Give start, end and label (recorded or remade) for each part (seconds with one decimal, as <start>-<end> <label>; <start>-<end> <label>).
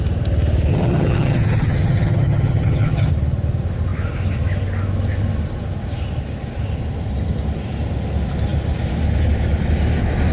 0.0-0.7 recorded; 0.7-3.1 remade; 3.1-10.3 recorded